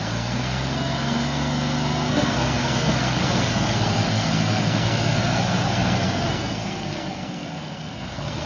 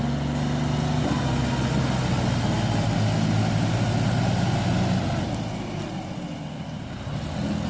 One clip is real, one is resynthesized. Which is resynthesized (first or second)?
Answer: first